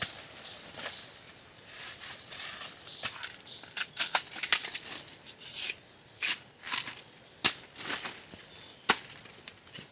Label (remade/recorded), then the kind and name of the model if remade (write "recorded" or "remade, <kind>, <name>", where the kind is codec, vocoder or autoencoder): recorded